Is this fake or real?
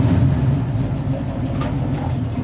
fake